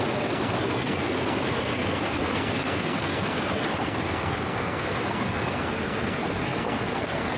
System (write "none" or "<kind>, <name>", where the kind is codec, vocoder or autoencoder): codec, SNAC